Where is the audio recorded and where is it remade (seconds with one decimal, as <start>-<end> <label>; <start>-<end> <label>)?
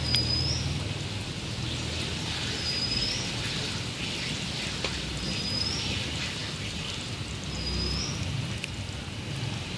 0.0-9.8 recorded